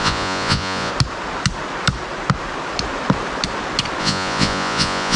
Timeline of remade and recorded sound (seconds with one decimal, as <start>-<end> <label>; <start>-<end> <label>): 0.0-0.9 remade; 0.9-4.0 recorded; 4.0-5.2 remade